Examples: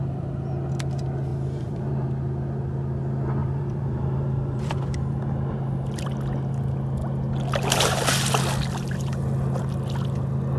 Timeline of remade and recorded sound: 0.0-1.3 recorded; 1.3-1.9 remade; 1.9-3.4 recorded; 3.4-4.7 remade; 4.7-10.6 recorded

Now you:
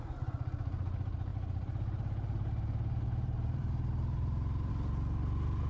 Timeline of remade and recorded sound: 0.0-1.3 recorded; 1.3-4.7 remade; 4.7-5.7 recorded